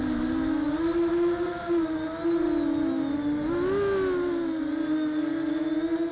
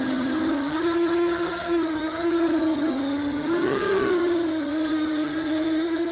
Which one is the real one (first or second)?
first